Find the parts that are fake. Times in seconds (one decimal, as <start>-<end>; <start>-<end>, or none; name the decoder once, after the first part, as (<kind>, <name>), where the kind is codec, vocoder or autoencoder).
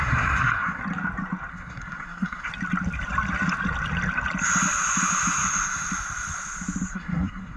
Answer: 0.0-0.8 (codec, SNAC); 1.5-2.5; 6.9-7.6